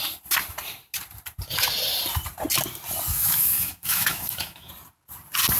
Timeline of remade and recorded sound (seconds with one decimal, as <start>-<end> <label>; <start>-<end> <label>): 0.0-3.1 recorded; 3.1-4.7 remade; 4.7-5.6 recorded